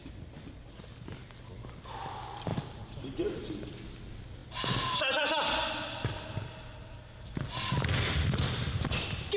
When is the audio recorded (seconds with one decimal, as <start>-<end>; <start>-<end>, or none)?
0.0-2.5; 3.5-9.4